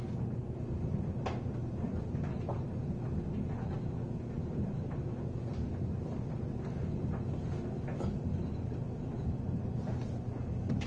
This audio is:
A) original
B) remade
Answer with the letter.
A